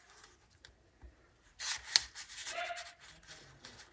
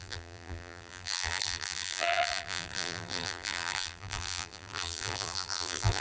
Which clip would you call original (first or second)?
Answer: first